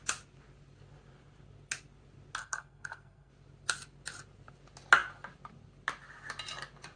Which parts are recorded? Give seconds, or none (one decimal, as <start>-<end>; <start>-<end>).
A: 0.0-2.4; 3.3-7.0